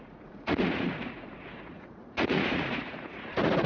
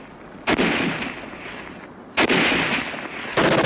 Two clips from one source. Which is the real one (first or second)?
second